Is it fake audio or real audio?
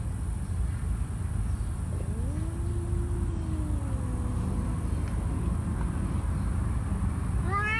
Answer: real